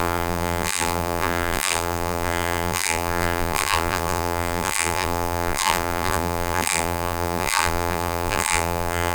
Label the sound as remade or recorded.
remade